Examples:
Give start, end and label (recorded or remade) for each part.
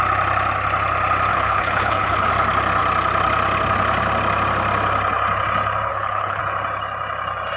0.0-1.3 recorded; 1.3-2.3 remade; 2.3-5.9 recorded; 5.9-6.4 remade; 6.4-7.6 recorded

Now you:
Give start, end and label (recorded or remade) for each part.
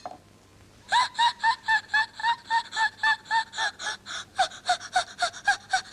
0.0-5.9 recorded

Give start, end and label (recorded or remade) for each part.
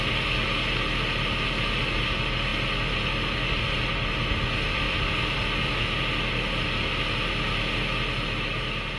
0.0-9.0 recorded